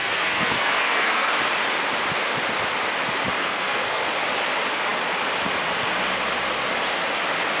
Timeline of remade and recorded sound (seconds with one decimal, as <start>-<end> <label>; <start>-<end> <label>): 0.0-1.3 remade; 1.3-3.4 recorded; 3.4-4.0 remade; 4.0-7.6 recorded